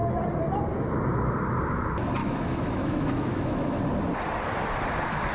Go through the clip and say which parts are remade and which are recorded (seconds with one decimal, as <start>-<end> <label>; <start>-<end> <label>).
0.0-2.2 recorded; 2.2-3.8 remade; 3.8-5.3 recorded